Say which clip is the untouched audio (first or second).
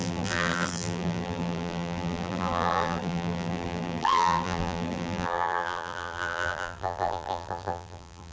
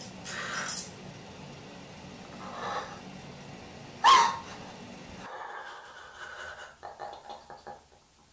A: second